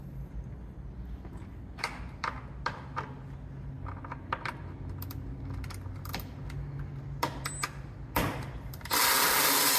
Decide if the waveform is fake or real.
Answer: real